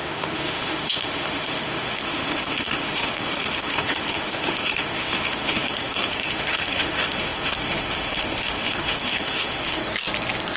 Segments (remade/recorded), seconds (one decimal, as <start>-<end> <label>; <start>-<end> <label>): 0.0-9.8 remade; 9.8-10.6 recorded